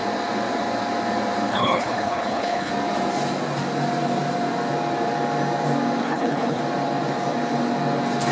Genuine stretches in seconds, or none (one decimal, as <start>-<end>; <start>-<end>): 0.0-1.5; 2.7-6.0; 6.6-8.3